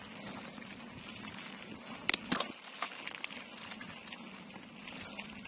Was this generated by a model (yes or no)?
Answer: no